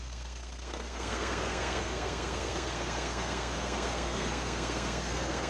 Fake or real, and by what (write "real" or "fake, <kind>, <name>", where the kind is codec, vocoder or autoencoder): fake, codec, SNAC